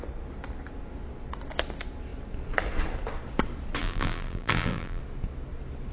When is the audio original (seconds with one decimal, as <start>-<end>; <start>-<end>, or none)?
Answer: 0.0-3.8; 5.0-5.9